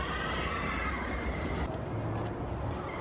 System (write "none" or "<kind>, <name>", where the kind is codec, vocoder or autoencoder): none